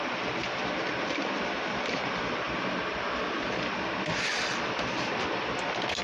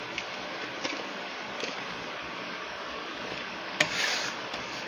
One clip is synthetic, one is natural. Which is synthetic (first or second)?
second